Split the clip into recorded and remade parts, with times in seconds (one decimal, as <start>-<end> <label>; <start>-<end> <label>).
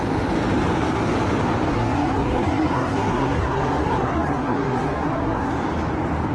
0.0-1.7 recorded; 1.7-5.5 remade; 5.5-6.3 recorded